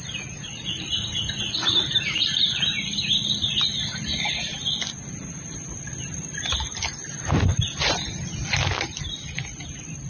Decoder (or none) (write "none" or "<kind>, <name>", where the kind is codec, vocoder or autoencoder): none